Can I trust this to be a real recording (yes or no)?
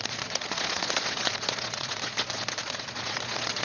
no